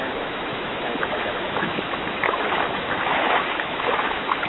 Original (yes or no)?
no